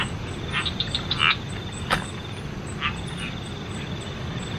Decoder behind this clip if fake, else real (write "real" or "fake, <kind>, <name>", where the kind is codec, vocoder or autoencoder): real